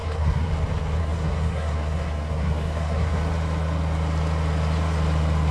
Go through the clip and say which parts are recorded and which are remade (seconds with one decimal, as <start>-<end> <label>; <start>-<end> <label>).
0.0-0.5 remade; 0.5-1.0 recorded; 1.0-3.2 remade; 3.2-5.5 recorded